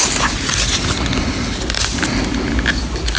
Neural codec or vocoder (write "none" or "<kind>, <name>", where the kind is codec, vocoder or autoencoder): none